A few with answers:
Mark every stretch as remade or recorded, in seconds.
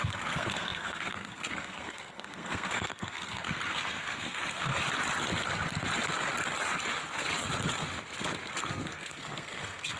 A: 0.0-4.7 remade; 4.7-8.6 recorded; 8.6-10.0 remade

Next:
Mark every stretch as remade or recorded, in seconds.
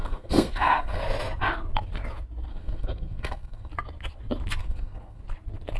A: 0.0-1.0 remade; 1.0-2.5 recorded; 2.5-3.7 remade; 3.7-4.6 recorded; 4.6-5.2 remade; 5.2-5.8 recorded